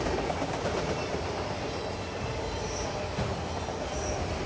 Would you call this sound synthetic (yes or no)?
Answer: no